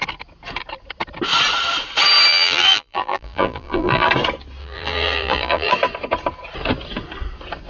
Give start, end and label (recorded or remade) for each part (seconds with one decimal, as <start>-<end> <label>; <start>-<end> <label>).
0.0-2.3 recorded; 2.3-4.1 remade; 4.1-4.6 recorded; 4.6-5.7 remade; 5.7-7.7 recorded